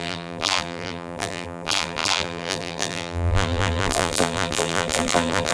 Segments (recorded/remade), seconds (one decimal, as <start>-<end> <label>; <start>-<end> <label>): 0.0-5.5 remade

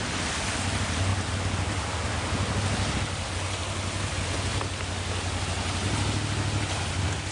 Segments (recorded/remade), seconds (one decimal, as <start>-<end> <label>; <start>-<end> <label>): 0.0-7.3 recorded

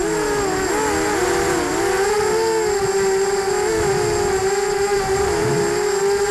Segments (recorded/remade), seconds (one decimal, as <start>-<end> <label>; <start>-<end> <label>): 0.0-1.2 recorded; 1.2-1.8 remade; 1.8-4.9 recorded; 4.9-5.6 remade; 5.6-6.3 recorded

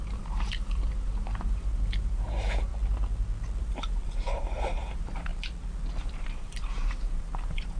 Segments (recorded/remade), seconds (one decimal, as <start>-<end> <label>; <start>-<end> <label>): 0.0-2.7 remade; 2.7-3.6 recorded; 3.6-5.3 remade; 5.3-6.0 recorded; 6.0-7.8 remade

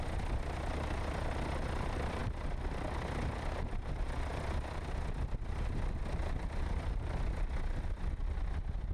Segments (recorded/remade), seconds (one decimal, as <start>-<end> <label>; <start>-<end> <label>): 0.0-8.9 recorded

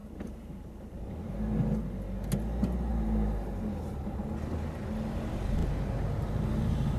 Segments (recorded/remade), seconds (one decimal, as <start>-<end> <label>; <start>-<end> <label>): 0.0-0.7 remade; 0.7-2.9 recorded; 2.9-4.2 remade; 4.2-7.0 recorded

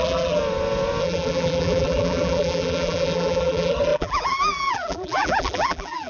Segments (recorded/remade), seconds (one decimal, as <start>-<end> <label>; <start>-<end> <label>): 0.0-0.4 remade; 0.4-1.0 recorded; 1.0-6.1 remade